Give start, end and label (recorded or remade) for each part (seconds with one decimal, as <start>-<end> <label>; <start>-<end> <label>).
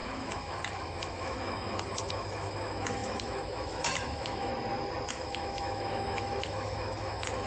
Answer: 0.0-4.5 remade; 4.5-5.1 recorded; 5.1-7.5 remade